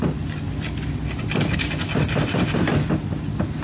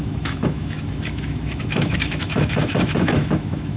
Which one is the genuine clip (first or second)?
first